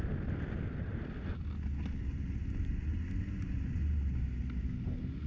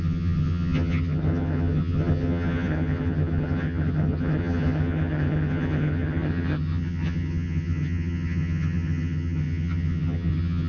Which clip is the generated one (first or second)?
second